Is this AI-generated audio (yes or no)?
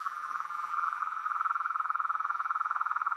yes